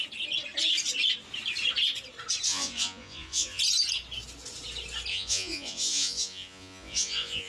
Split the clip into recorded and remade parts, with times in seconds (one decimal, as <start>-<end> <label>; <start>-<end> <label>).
0.0-2.5 recorded; 2.5-3.6 remade; 3.6-5.1 recorded; 5.1-7.5 remade